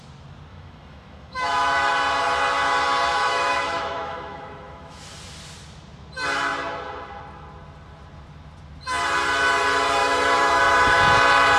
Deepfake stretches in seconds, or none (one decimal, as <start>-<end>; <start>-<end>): 0.5-1.9; 3.1-5.0; 10.0-10.6